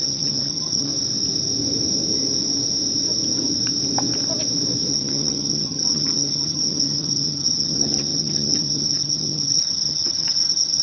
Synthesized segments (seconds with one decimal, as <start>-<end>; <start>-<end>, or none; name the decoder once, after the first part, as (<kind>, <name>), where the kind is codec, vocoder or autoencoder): 0.0-0.9 (vocoder, HiFi-GAN); 4.9-10.8